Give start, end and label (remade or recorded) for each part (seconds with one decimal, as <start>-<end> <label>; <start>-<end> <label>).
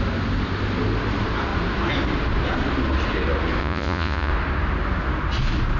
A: 0.0-3.6 recorded; 3.6-4.3 remade; 4.3-5.8 recorded